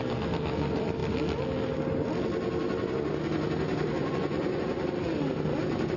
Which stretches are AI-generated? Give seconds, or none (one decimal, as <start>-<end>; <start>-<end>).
4.0-4.8